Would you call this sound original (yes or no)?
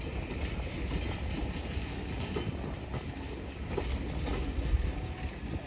yes